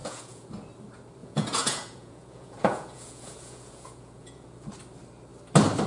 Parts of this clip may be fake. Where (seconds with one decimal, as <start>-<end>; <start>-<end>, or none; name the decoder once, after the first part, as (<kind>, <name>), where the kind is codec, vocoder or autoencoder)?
0.0-0.5 (vocoder, Vocos); 1.2-4.7